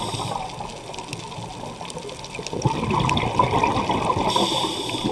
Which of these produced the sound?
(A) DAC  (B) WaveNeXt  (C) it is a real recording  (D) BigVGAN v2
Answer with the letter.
C